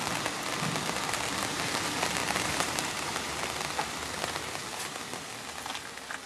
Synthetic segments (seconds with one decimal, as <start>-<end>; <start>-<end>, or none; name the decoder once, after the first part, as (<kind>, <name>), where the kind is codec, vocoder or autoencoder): 2.2-3.1 (vocoder, BigVGAN v2)